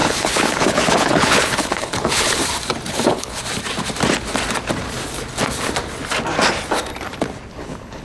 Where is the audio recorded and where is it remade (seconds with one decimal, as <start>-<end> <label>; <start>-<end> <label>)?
0.0-2.4 remade; 2.4-2.9 recorded; 2.9-3.4 remade; 3.4-7.5 recorded; 7.5-8.0 remade